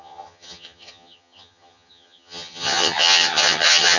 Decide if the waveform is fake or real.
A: fake